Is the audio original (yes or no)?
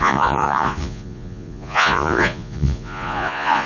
no